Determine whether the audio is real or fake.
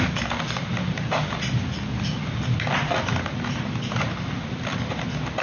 real